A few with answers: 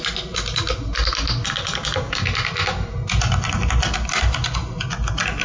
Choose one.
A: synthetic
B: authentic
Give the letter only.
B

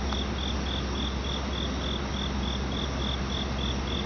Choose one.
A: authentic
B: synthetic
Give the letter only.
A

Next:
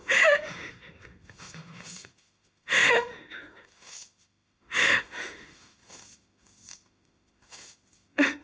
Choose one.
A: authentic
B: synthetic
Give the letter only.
B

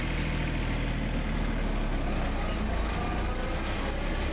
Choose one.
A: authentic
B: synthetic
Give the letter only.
A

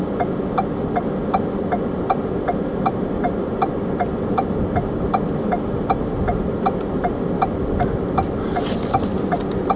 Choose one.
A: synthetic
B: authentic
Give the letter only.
B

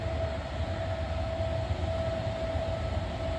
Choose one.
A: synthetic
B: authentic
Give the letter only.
B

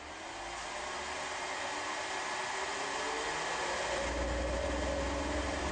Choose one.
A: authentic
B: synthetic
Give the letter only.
A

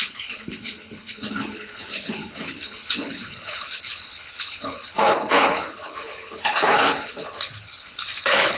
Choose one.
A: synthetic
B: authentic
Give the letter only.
A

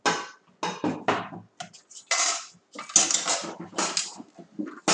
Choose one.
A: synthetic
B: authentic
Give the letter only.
B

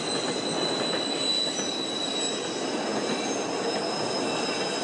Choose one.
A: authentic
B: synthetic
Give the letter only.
A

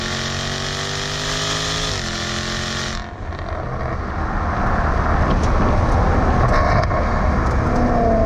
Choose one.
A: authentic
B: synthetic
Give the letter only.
A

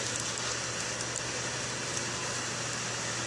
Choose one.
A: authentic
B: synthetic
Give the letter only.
A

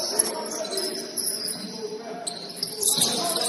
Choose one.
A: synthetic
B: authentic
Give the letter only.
B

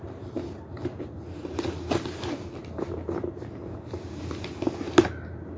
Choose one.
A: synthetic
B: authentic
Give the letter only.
B